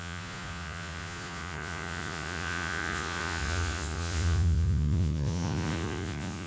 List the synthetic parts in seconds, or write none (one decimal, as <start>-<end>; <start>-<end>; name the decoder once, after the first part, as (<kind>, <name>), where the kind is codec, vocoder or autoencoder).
0.0-6.5 (vocoder, Vocos)